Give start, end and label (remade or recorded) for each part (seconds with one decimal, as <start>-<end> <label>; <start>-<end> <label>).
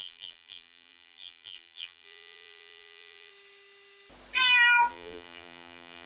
0.0-3.3 remade; 3.3-4.9 recorded; 4.9-6.1 remade